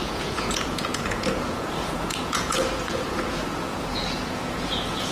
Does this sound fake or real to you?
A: fake